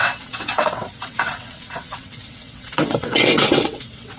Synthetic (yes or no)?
yes